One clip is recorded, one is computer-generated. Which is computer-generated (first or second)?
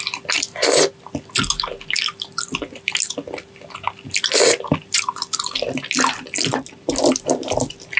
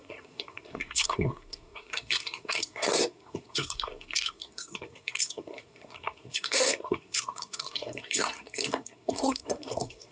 second